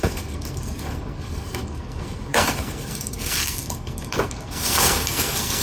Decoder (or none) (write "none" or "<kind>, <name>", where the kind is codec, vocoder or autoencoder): codec, SNAC